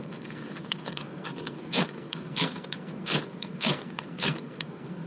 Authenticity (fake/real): fake